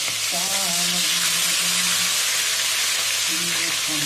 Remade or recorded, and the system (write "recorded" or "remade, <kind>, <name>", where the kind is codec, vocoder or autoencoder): recorded